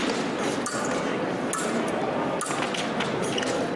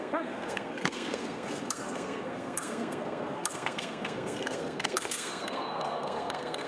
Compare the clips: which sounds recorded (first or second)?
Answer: first